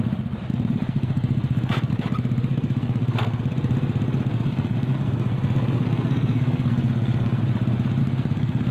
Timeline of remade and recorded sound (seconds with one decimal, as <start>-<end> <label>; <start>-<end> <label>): 0.0-0.5 recorded; 0.5-1.9 remade; 1.9-2.5 recorded; 2.5-3.4 remade; 3.4-4.3 recorded; 4.3-7.4 remade; 7.4-8.0 recorded; 8.0-8.7 remade